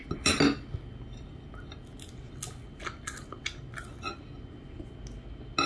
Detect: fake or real real